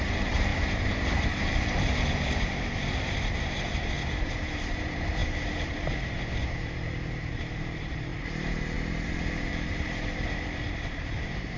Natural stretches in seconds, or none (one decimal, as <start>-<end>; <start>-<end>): none